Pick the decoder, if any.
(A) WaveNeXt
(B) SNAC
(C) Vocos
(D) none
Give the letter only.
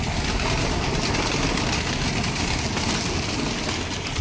D